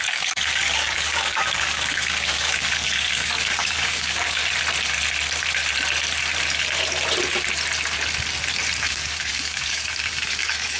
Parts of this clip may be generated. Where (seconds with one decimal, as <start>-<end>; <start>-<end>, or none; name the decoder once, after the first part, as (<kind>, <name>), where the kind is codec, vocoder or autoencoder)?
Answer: 0.0-4.4 (codec, DAC); 8.8-10.8